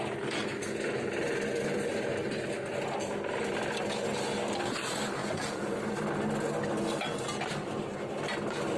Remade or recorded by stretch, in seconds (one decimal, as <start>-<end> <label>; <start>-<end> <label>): 0.0-5.2 recorded; 5.2-5.8 remade; 5.8-8.8 recorded